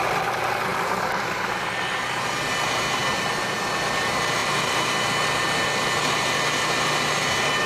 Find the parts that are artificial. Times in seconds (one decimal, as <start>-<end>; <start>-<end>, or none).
0.7-1.8; 4.4-5.1